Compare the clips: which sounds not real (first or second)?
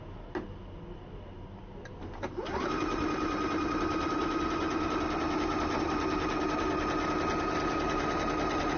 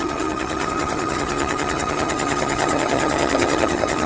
second